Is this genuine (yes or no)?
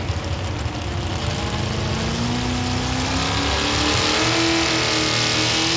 yes